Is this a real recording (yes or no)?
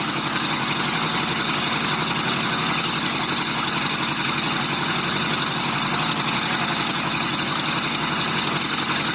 no